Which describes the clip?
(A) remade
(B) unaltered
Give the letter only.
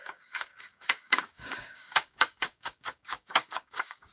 A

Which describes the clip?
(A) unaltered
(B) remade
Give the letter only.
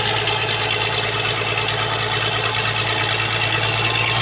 A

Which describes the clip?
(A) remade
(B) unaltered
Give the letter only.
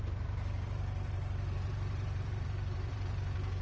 A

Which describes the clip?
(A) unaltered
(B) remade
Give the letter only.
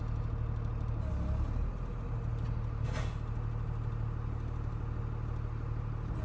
A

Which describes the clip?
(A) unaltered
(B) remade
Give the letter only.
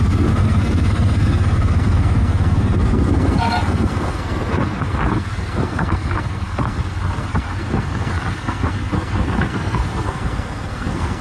B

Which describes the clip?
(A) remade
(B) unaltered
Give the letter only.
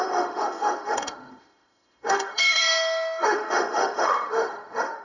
A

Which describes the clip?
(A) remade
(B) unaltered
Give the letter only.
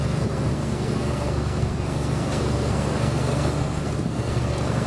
A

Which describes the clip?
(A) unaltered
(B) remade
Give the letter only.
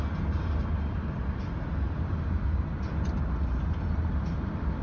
A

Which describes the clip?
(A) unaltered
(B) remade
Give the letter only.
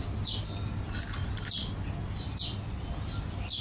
A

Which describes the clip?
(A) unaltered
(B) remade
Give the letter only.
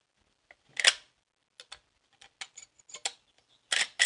A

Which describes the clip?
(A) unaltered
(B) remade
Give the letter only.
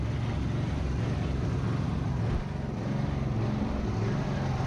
A